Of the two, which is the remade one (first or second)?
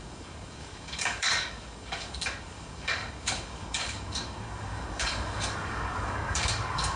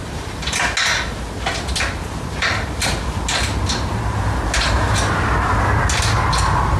first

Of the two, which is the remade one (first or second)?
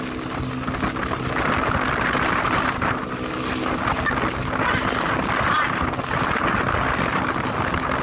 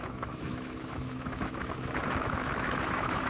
second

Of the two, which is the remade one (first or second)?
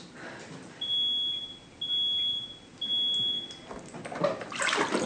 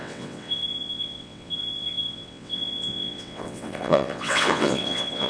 second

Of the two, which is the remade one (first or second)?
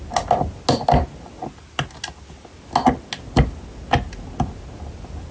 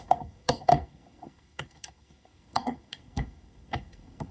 second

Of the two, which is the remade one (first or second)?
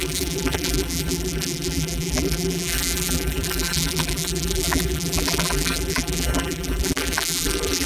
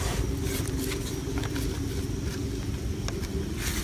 first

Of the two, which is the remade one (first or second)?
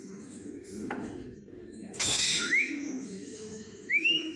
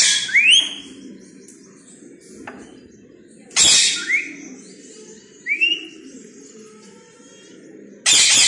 first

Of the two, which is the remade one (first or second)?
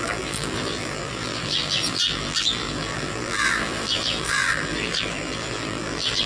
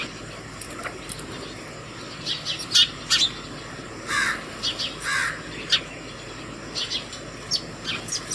first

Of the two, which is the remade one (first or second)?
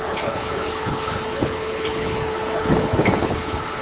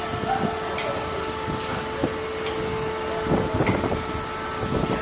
first